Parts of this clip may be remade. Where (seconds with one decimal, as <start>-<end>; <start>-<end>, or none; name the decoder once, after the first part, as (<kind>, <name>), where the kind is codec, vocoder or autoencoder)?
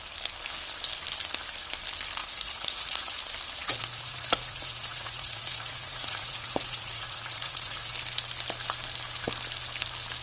2.2-3.2 (vocoder, Vocos); 3.6-7.9